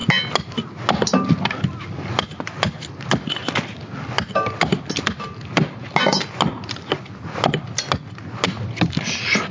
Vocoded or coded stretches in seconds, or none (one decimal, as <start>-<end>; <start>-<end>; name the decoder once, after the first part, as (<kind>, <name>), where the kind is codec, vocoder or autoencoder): none